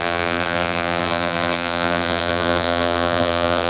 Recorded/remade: remade